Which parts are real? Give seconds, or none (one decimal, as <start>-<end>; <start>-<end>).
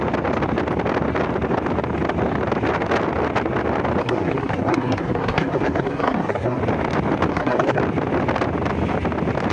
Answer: 0.0-4.0; 6.6-7.3; 7.8-9.5